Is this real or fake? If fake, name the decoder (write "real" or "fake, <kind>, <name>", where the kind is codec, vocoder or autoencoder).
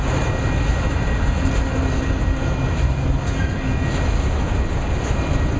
real